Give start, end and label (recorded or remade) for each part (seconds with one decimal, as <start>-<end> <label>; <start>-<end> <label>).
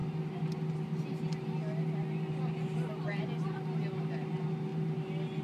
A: 0.0-5.4 recorded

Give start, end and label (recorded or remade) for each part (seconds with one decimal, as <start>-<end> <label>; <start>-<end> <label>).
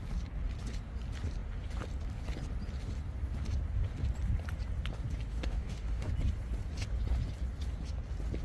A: 0.0-5.3 recorded; 5.3-6.1 remade; 6.1-8.4 recorded